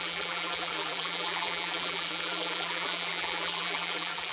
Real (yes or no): no